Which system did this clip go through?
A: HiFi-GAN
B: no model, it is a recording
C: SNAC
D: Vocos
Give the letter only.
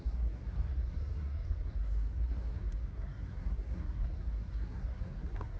C